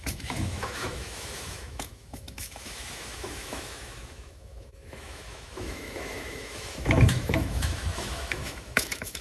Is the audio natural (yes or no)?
no